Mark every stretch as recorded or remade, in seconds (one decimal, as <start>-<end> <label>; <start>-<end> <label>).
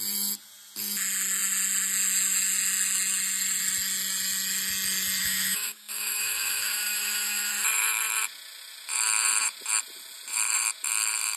0.0-5.2 recorded; 5.2-7.5 remade; 7.5-11.4 recorded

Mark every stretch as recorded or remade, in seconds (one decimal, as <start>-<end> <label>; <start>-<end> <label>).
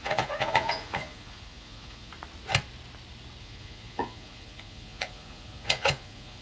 0.0-2.1 remade; 2.1-3.4 recorded; 3.4-6.4 remade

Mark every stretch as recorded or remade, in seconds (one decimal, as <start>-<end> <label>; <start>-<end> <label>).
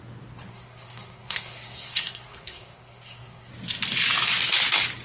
0.0-0.5 recorded; 0.5-3.5 remade; 3.5-5.0 recorded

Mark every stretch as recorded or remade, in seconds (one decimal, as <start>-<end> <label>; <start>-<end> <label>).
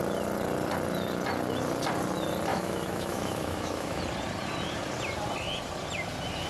0.0-2.5 recorded; 2.5-4.0 remade; 4.0-6.5 recorded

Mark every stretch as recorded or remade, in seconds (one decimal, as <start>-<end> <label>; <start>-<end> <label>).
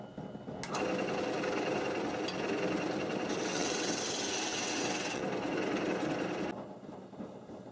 0.0-3.5 recorded; 3.5-4.0 remade; 4.0-4.5 recorded; 4.5-5.2 remade; 5.2-7.7 recorded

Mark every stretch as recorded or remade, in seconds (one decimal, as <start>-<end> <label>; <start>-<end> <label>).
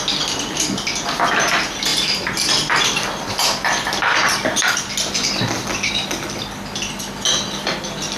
0.0-5.7 recorded; 5.7-6.3 remade; 6.3-8.2 recorded